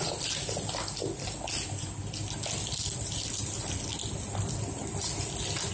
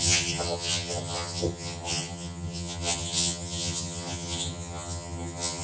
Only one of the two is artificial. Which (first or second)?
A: second